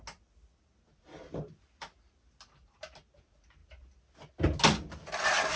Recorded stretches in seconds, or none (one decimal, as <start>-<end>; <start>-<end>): 0.0-5.6